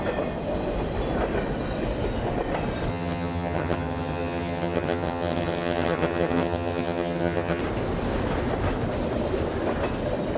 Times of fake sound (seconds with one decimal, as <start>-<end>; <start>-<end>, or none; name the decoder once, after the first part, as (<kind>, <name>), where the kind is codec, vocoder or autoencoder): 2.9-7.6 (vocoder, HiFi-GAN)